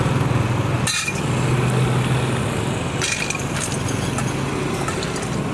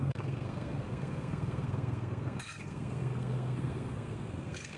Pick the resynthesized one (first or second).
second